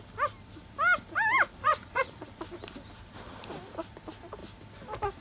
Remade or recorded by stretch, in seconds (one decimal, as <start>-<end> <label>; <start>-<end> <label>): 0.0-1.6 recorded; 1.6-2.3 remade; 2.3-5.2 recorded